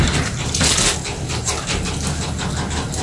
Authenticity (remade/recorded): recorded